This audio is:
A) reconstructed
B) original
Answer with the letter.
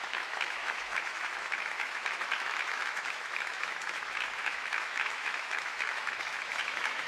A